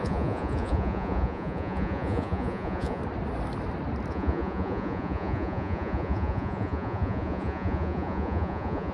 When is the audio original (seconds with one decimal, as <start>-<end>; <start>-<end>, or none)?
3.0-4.1